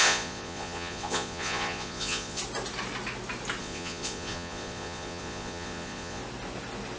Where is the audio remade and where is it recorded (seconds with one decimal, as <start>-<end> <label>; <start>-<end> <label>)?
0.0-2.4 remade; 2.4-3.6 recorded; 3.6-6.2 remade; 6.2-7.0 recorded